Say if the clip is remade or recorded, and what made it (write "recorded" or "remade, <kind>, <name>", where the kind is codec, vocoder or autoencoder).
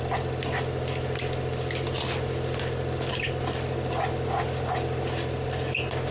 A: recorded